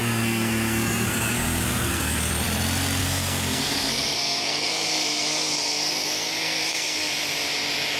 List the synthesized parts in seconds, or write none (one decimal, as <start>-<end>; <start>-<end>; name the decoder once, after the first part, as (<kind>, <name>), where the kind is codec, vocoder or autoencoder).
0.0-2.3 (codec, SNAC); 3.0-7.1